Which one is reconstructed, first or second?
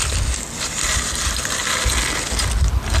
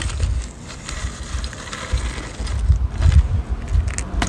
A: first